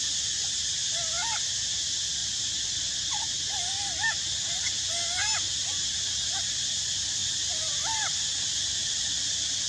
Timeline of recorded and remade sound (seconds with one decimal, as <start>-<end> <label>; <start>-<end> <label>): 0.0-8.8 recorded; 8.8-9.7 remade